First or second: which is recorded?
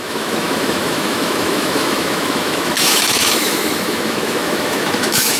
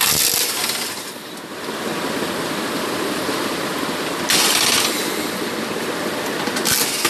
second